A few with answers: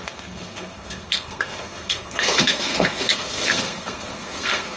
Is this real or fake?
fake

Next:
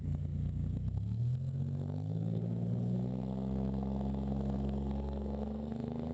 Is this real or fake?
fake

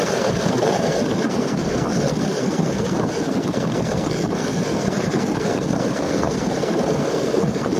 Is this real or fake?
fake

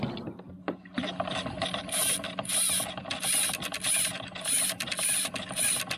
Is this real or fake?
real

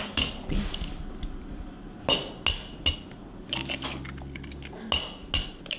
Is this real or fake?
real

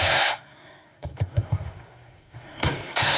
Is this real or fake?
fake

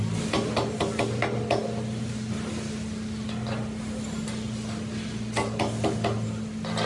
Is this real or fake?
real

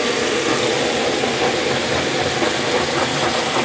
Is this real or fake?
real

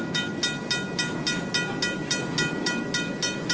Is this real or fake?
real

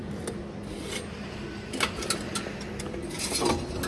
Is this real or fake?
real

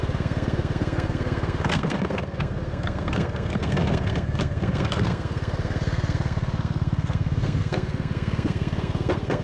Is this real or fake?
fake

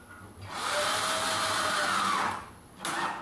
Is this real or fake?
real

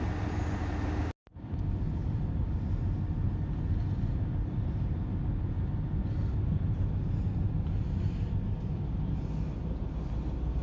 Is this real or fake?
real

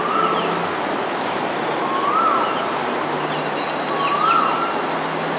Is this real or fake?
real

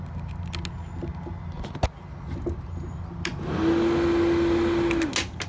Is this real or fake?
real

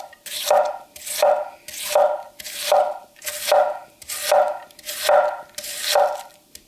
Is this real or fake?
real